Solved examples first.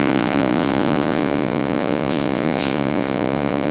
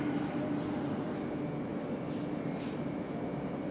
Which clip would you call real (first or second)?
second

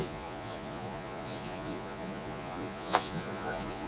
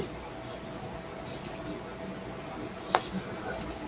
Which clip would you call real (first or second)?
second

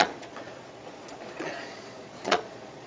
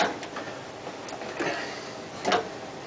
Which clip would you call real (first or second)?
second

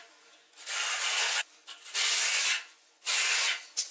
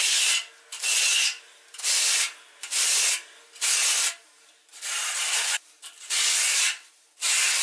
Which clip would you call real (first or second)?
second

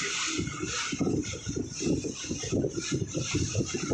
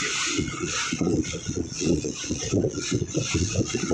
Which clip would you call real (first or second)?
first